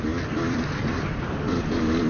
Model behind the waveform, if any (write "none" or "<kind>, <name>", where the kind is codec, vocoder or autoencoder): none